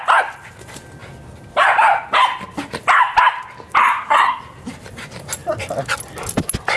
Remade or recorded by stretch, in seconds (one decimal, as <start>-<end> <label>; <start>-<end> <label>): 0.0-3.8 recorded; 3.8-4.4 remade; 4.4-6.8 recorded